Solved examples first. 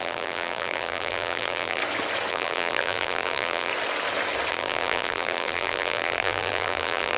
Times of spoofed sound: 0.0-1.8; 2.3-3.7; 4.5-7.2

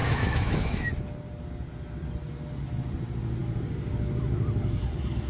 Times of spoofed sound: 0.0-0.9